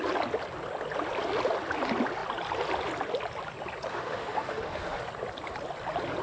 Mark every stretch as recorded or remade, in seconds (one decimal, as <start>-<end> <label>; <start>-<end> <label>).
0.0-3.9 recorded; 3.9-5.0 remade; 5.0-6.2 recorded